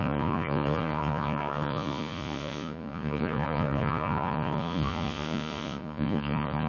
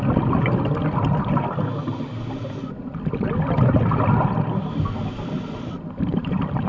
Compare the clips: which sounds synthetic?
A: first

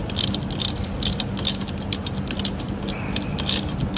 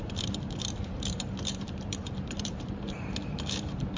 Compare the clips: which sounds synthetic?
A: second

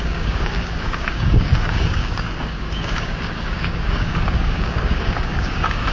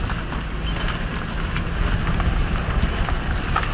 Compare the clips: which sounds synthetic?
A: first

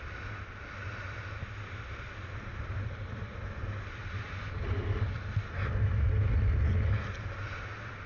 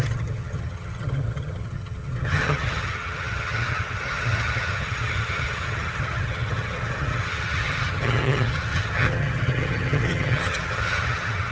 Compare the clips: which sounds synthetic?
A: second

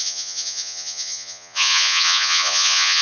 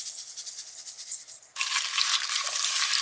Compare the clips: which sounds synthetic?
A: first